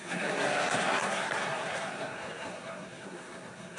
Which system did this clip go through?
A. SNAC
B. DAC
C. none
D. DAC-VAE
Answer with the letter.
A